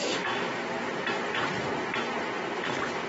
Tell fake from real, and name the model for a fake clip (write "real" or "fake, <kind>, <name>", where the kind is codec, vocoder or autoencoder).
real